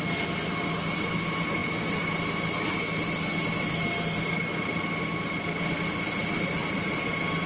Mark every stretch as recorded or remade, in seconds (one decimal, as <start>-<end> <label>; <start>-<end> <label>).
0.0-7.5 recorded